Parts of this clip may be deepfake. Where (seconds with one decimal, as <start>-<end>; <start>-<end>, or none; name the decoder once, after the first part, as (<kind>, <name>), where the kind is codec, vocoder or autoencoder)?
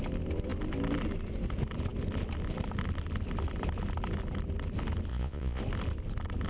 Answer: 5.1-5.6 (vocoder, Vocos)